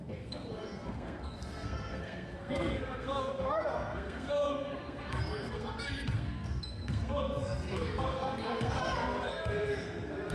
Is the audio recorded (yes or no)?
no